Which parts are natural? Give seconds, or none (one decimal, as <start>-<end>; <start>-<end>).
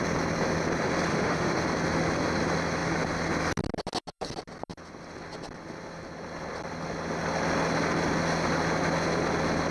0.0-1.1; 1.6-9.7